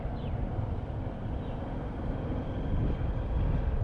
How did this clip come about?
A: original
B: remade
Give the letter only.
A